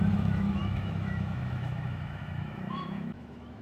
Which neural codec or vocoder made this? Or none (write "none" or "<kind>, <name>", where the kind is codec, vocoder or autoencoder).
autoencoder, DAC-VAE